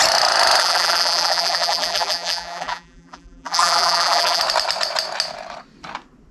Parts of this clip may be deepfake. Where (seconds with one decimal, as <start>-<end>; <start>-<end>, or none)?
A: 0.6-4.4